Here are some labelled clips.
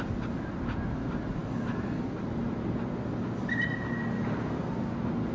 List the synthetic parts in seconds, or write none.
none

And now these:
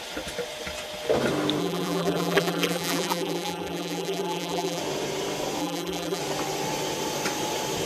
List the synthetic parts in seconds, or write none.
1.6-4.8 (vocoder, BigVGAN v2); 5.6-6.2